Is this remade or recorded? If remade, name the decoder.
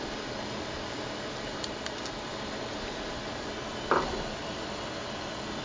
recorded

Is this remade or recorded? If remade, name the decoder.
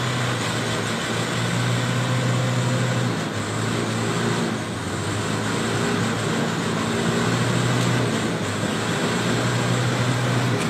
recorded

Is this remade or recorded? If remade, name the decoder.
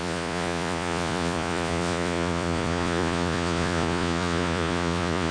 remade, vocoder, Vocos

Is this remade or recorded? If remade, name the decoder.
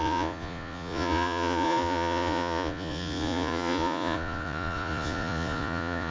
remade, vocoder, Vocos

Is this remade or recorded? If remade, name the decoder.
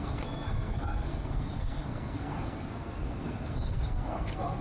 remade, codec, SNAC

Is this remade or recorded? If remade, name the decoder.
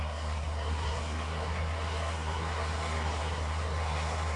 remade, codec, SNAC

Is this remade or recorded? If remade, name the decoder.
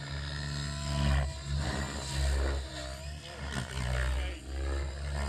recorded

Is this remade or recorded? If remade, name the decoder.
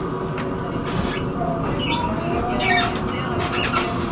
recorded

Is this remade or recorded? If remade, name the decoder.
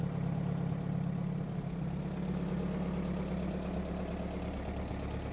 recorded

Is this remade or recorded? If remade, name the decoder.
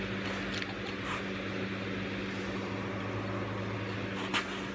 recorded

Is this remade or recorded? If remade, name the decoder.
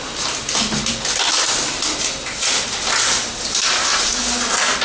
recorded